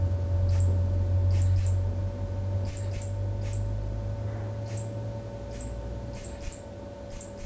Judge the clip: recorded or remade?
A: recorded